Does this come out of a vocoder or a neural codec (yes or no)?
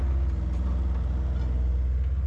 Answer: no